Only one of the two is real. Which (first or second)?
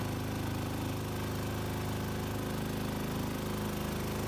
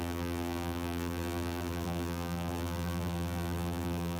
first